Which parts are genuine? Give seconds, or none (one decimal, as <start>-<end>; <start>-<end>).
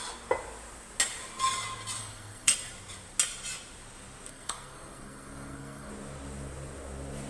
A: 0.0-2.0; 2.5-4.3; 5.9-7.3